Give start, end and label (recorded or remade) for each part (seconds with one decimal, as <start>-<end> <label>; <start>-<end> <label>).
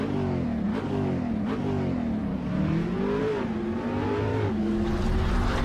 0.0-0.7 recorded; 0.7-1.3 remade; 1.3-4.3 recorded; 4.3-4.9 remade; 4.9-5.6 recorded